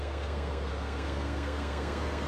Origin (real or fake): fake